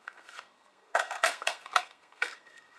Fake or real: fake